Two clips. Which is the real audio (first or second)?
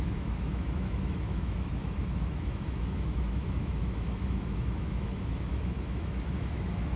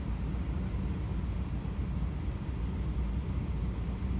second